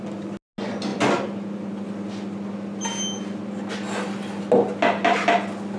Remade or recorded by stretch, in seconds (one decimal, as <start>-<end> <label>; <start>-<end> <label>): 0.0-5.8 recorded